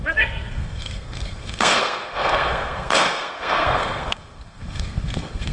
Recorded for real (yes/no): no